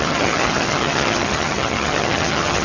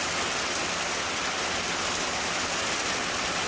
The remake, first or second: first